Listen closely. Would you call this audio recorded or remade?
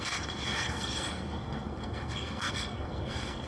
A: remade